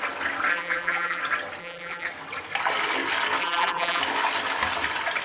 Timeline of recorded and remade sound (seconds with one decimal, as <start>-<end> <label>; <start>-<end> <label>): 0.0-0.5 recorded; 0.5-1.2 remade; 1.2-1.6 recorded; 1.6-2.1 remade; 2.1-3.4 recorded; 3.4-4.0 remade; 4.0-5.2 recorded